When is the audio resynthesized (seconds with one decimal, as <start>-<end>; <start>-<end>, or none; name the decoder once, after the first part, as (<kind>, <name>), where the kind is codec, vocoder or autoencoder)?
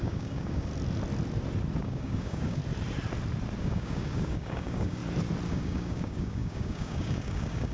0.0-0.7 (codec, DAC); 1.8-2.6; 3.6-5.0; 5.5-7.7